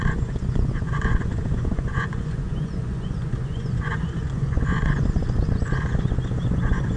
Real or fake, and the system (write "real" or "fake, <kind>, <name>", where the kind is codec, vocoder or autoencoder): fake, vocoder, Vocos